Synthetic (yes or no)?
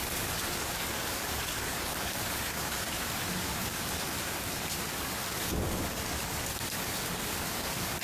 yes